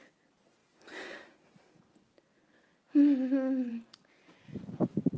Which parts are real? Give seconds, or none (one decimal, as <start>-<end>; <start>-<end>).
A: 0.0-5.2